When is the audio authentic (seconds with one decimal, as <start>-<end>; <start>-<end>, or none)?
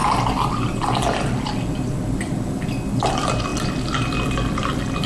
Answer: 0.0-5.1